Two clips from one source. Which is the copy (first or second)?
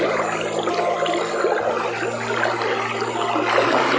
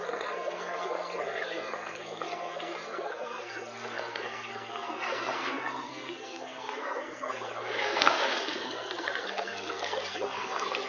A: second